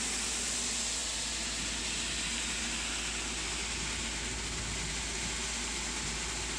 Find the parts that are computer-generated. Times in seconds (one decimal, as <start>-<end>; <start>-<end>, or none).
none